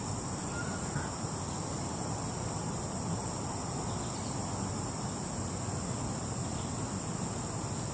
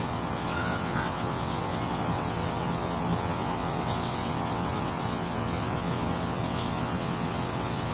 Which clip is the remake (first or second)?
second